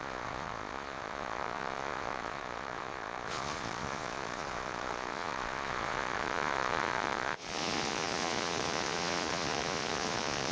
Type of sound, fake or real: fake